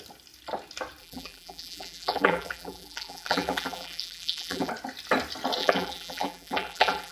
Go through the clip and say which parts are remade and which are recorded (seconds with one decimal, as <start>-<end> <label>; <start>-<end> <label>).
0.0-1.0 recorded; 1.0-4.7 remade; 4.7-5.6 recorded; 5.6-7.1 remade